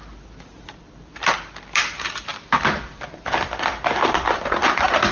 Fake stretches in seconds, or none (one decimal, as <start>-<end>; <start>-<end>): none